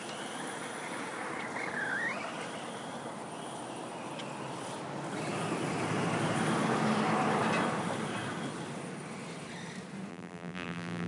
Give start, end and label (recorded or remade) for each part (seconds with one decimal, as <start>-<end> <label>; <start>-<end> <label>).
0.0-10.1 recorded; 10.1-11.1 remade